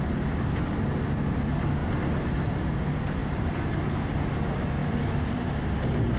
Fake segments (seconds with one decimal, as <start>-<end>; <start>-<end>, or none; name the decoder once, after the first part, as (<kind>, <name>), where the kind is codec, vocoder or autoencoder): 3.2-3.7 (vocoder, BigVGAN v2); 4.8-5.4